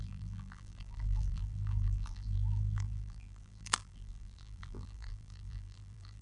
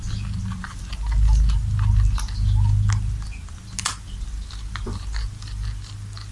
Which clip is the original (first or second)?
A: second